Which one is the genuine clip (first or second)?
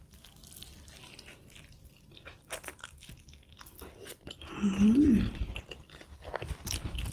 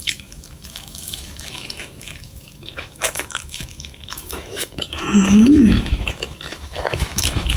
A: first